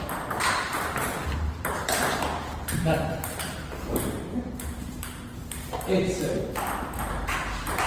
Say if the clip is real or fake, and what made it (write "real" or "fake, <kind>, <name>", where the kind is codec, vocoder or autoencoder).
fake, vocoder, BigVGAN v2